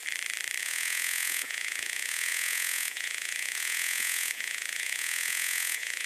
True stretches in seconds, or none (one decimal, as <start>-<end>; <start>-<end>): 0.0-0.6